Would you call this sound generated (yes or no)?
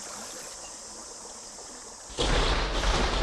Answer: no